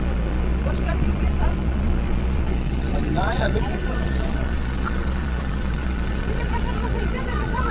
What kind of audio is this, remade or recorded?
remade